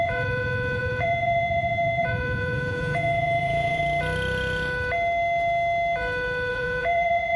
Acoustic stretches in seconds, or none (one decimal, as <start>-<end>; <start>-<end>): 3.8-6.5